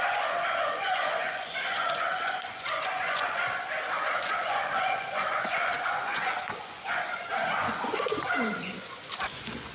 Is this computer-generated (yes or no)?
yes